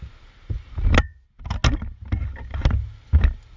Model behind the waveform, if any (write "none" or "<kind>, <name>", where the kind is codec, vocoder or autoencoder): none